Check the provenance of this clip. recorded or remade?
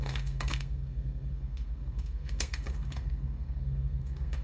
remade